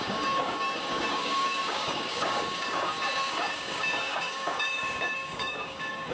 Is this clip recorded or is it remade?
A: remade